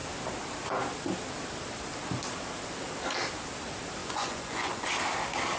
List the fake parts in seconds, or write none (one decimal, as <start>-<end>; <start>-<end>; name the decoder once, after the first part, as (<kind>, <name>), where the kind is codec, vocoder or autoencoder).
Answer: 4.0-4.9 (vocoder, Vocos)